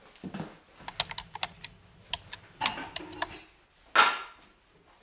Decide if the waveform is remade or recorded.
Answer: recorded